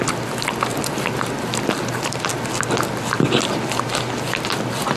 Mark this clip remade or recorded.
recorded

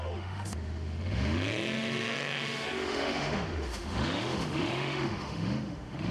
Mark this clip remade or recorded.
remade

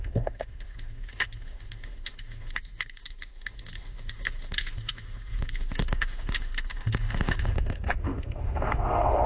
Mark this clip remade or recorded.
remade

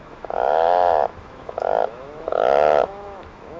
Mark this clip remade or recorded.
remade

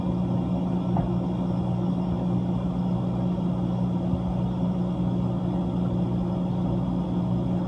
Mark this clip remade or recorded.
recorded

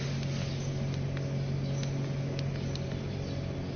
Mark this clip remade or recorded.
recorded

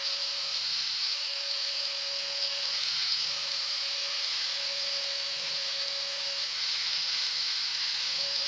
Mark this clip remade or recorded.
remade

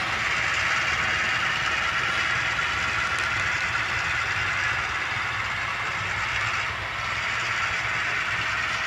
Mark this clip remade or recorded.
recorded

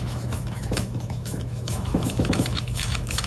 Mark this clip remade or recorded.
remade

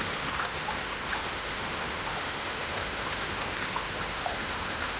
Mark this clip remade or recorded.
remade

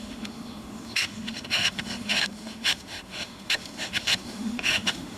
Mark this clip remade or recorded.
remade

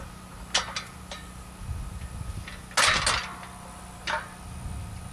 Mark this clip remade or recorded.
recorded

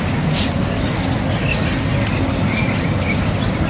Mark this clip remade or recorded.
recorded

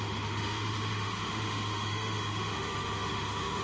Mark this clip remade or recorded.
remade